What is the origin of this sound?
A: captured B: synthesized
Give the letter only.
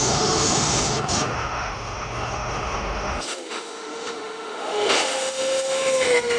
B